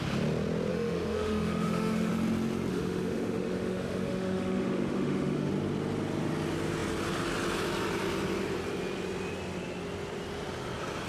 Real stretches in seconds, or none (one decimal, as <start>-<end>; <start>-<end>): 0.0-0.7; 2.1-2.7; 5.5-11.1